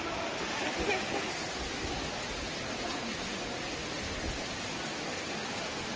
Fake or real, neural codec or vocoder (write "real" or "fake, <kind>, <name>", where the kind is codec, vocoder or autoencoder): real